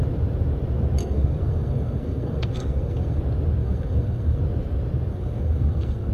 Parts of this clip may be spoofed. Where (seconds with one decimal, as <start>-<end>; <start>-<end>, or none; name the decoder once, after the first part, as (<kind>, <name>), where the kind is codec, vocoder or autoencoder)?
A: 1.0-3.2 (codec, SNAC); 3.6-4.4; 5.1-6.1